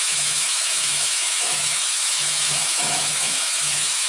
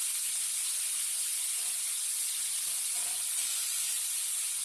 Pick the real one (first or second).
second